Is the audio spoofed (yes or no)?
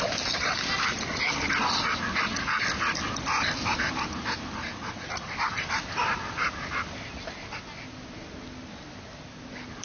no